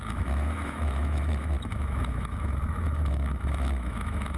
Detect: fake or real fake